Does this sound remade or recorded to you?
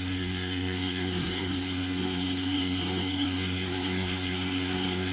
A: remade